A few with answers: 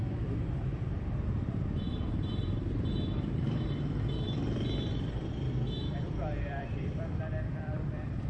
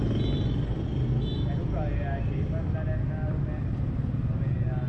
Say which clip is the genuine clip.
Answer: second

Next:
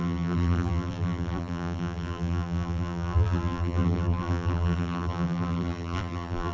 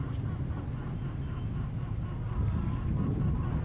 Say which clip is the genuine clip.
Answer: second